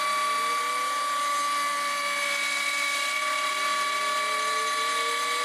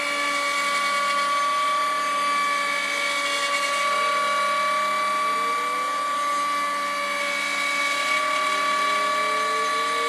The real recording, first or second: second